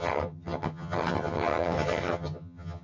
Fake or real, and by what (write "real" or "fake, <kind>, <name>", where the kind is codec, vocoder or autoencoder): fake, vocoder, HiFi-GAN